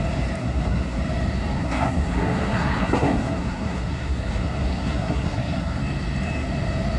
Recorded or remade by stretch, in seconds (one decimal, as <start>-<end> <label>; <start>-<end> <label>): 0.0-0.4 recorded; 0.4-1.0 remade; 1.0-1.6 recorded; 1.6-5.8 remade; 5.8-7.0 recorded